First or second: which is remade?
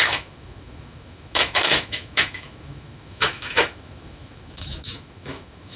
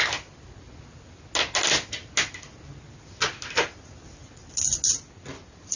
first